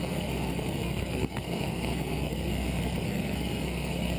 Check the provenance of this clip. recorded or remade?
remade